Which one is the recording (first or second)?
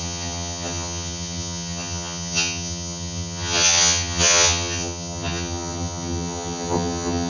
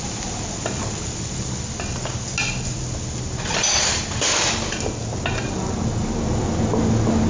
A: second